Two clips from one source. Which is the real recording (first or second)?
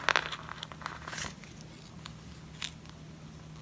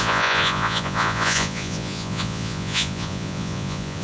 first